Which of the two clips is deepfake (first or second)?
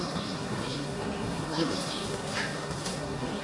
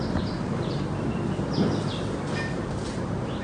first